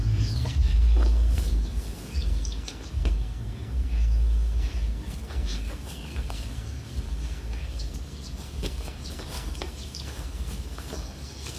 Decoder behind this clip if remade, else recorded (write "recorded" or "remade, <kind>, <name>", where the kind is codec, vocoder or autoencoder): remade, codec, SNAC